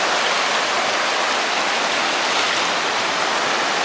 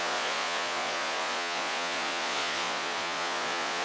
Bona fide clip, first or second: first